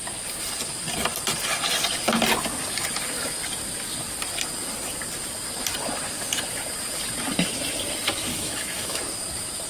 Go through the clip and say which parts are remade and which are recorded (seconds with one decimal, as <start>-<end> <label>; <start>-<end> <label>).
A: 0.0-8.3 recorded; 8.3-9.0 remade; 9.0-9.7 recorded

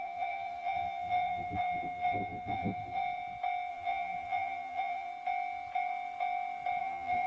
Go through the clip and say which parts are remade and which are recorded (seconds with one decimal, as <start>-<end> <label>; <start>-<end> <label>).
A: 0.0-3.0 remade; 3.0-3.7 recorded; 3.7-5.1 remade; 5.1-6.8 recorded; 6.8-7.3 remade

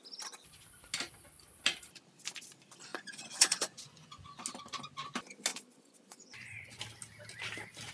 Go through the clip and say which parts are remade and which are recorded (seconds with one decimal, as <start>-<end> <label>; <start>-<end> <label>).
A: 0.0-2.9 recorded; 2.9-4.4 remade; 4.4-5.5 recorded; 5.5-6.8 remade; 6.8-7.9 recorded

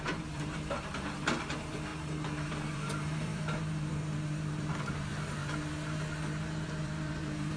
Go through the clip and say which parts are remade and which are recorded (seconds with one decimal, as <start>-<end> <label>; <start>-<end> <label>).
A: 0.0-1.9 remade; 1.9-2.7 recorded; 2.7-5.4 remade; 5.4-6.4 recorded; 6.4-7.6 remade

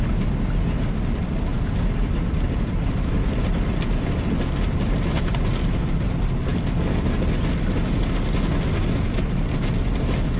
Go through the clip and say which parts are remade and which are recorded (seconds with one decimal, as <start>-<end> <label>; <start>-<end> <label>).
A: 0.0-10.4 recorded

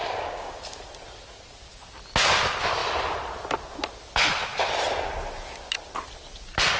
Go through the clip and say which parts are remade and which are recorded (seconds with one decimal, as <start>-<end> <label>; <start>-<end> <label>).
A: 0.0-0.6 remade; 0.6-6.8 recorded